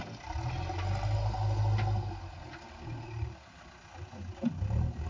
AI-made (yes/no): no